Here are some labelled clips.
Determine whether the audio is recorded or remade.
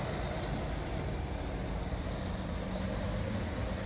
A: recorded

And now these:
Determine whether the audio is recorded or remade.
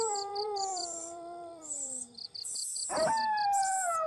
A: remade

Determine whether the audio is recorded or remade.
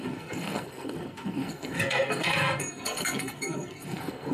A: remade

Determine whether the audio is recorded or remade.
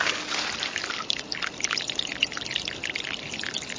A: recorded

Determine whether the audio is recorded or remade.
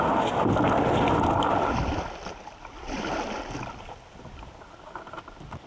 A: recorded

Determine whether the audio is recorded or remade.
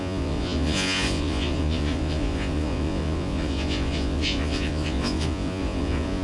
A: remade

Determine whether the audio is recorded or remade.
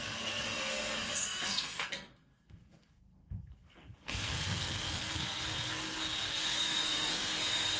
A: remade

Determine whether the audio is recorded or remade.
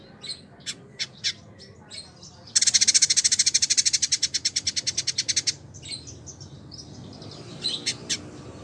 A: recorded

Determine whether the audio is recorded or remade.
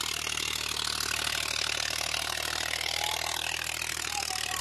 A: recorded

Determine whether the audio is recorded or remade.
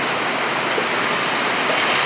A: recorded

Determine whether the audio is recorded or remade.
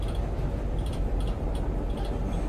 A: recorded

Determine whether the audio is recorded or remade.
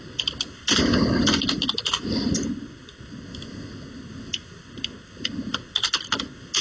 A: recorded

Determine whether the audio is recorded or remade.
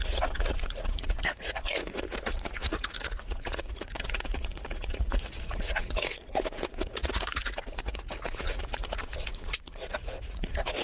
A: remade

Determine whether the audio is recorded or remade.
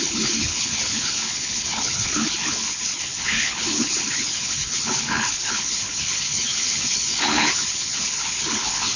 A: remade